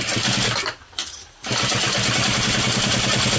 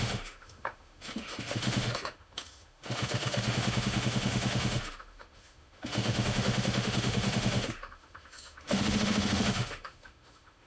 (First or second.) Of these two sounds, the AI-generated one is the second